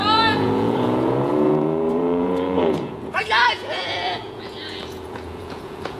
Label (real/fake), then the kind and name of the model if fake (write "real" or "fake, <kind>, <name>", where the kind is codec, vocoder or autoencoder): fake, vocoder, Vocos